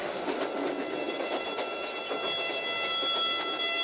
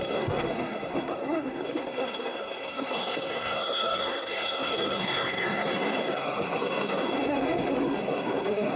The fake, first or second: second